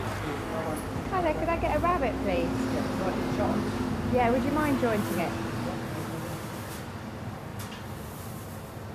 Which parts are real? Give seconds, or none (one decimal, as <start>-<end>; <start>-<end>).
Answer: 0.0-0.5; 1.0-7.5; 8.3-8.9